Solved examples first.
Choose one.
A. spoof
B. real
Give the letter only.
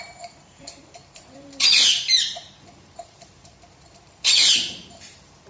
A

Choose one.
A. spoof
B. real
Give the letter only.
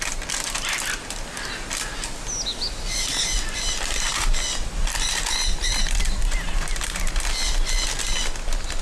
B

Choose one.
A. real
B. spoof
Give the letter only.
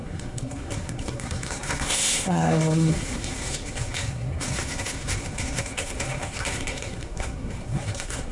B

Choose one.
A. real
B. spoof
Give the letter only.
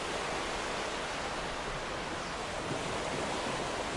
A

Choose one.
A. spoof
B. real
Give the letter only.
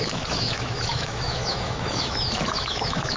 A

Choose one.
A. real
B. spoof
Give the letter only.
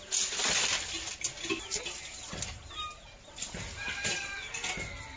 A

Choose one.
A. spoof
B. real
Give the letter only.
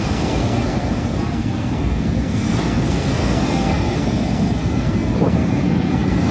A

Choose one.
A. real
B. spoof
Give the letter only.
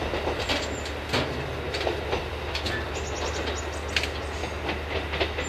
A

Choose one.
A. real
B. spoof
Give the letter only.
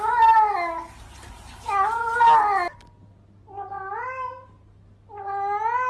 A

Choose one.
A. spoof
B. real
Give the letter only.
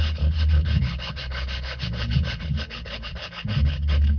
A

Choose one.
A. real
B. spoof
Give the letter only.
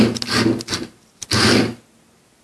A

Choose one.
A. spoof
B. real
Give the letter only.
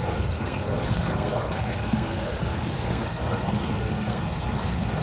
A